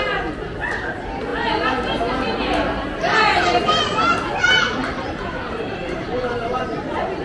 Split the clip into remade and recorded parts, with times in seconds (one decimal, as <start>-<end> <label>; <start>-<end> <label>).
0.0-4.8 recorded; 4.8-7.2 remade